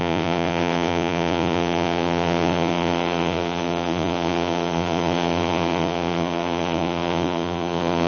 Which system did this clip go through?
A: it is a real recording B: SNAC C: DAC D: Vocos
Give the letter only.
D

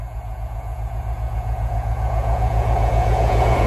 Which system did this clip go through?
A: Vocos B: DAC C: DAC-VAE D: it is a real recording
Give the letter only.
A